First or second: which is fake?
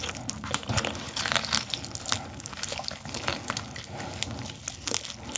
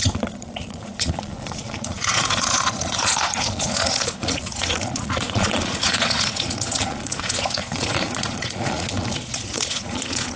second